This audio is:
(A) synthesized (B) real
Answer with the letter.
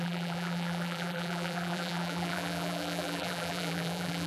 A